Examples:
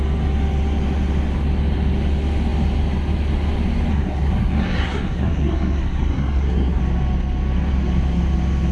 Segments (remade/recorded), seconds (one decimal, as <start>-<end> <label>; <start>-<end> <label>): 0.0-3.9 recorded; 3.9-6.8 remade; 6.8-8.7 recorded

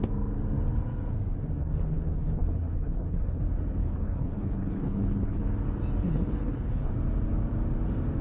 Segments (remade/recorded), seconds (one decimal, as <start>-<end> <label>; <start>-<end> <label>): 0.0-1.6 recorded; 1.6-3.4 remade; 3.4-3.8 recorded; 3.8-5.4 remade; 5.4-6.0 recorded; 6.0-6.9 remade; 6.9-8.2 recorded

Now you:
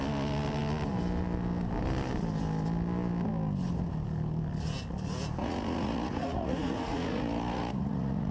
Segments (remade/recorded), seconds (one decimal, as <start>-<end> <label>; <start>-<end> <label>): 0.0-5.4 recorded; 5.4-8.3 remade

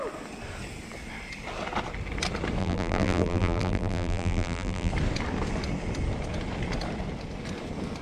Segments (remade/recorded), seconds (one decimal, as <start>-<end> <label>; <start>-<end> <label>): 0.0-2.6 recorded; 2.6-4.9 remade; 4.9-8.0 recorded